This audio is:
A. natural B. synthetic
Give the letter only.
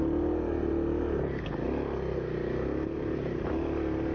A